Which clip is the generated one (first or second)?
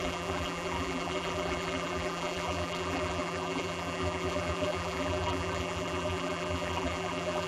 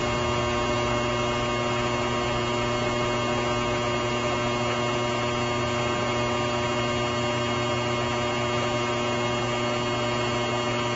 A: first